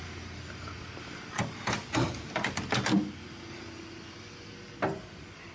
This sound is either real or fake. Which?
real